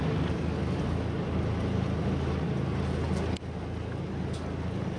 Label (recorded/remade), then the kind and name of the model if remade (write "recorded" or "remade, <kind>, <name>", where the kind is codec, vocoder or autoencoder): recorded